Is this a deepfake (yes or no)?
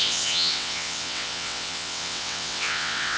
yes